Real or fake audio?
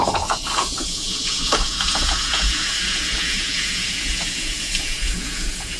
fake